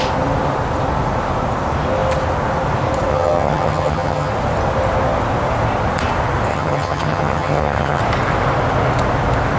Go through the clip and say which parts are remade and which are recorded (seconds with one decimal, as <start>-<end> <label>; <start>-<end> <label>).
0.0-3.1 recorded; 3.1-4.3 remade; 4.3-6.5 recorded; 6.5-8.0 remade; 8.0-9.6 recorded

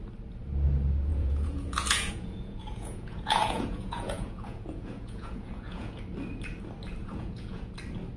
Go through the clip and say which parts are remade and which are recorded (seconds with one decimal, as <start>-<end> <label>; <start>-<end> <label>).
0.0-1.1 recorded; 1.1-6.0 remade; 6.0-7.0 recorded; 7.0-7.7 remade; 7.7-8.2 recorded

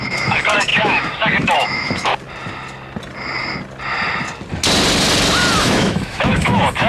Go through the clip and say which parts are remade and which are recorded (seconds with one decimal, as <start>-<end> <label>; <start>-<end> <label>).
0.0-2.1 remade; 2.1-5.6 recorded; 5.6-6.9 remade

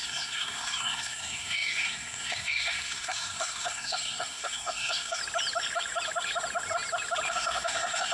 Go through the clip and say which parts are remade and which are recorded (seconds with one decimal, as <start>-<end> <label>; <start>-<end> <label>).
0.0-5.2 remade; 5.2-7.3 recorded; 7.3-8.1 remade

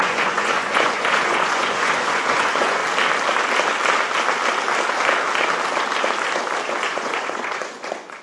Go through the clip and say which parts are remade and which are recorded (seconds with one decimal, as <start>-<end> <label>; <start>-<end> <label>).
0.0-2.8 remade; 2.8-6.7 recorded; 6.7-8.2 remade

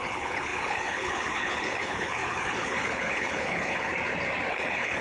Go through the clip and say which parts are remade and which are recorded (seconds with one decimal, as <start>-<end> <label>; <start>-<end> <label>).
0.0-3.9 remade; 3.9-4.5 recorded; 4.5-5.0 remade

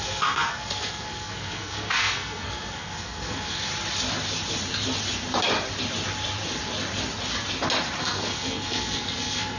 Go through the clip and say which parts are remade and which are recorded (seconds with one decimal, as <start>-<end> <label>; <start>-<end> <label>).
0.0-3.7 remade; 3.7-8.0 recorded; 8.0-9.6 remade